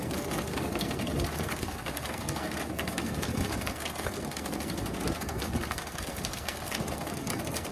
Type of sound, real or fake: fake